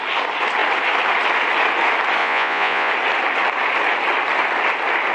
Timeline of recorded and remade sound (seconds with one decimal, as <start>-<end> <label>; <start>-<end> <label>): 0.0-2.2 recorded; 2.2-2.9 remade; 2.9-5.1 recorded